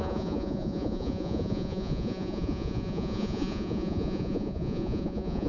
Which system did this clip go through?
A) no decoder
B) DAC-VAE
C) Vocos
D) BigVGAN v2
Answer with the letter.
C